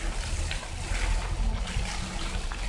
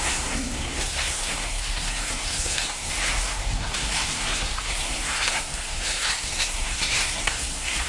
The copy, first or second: second